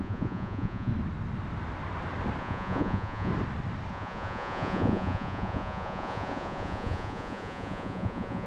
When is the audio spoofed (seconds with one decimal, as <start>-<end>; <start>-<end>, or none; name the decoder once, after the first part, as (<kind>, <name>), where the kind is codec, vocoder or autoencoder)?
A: 0.0-0.9 (vocoder, Vocos); 2.4-3.3; 3.9-8.5